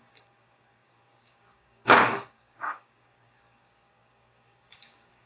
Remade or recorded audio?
remade